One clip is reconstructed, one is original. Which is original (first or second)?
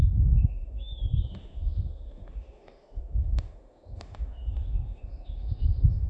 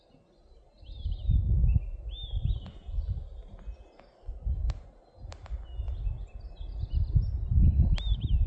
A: second